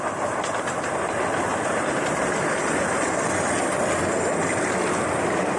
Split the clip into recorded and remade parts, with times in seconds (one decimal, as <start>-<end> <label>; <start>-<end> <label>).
0.0-5.6 recorded